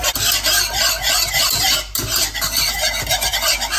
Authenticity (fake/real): real